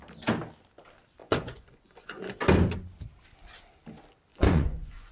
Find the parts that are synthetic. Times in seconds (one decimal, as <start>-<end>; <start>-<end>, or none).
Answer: 1.2-2.4; 4.3-5.1